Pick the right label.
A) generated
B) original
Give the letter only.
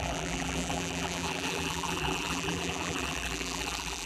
A